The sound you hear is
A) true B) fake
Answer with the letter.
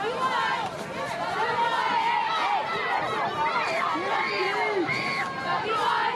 A